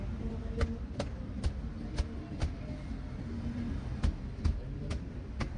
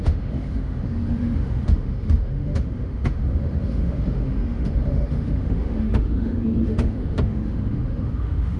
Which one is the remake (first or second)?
second